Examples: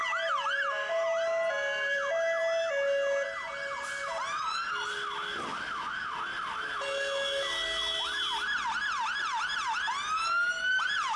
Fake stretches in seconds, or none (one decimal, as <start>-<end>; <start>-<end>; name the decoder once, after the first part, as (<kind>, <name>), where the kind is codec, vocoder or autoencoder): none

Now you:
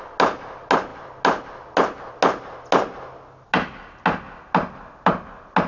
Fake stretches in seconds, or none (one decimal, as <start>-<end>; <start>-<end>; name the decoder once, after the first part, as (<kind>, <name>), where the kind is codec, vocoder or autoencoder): none

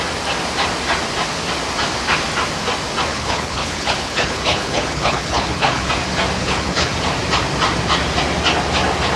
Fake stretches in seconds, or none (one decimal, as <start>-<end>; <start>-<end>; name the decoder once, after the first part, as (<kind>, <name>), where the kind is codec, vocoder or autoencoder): 3.1-5.9 (codec, HILCodec); 6.4-6.9

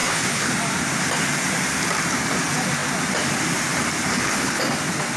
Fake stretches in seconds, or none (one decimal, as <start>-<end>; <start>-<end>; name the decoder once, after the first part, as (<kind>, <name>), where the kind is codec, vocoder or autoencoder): 0.0-0.5 (codec, HILCodec); 4.1-4.6